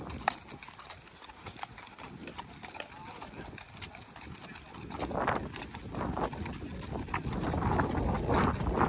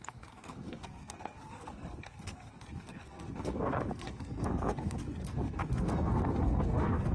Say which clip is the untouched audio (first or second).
first